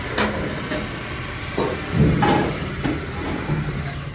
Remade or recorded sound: recorded